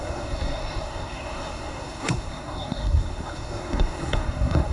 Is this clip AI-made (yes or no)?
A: yes